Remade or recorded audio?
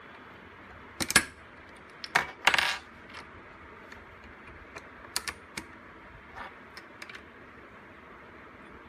recorded